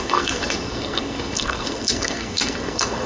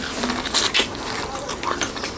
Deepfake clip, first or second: first